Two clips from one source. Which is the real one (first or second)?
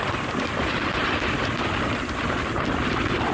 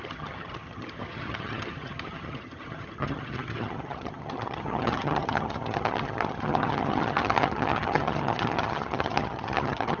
first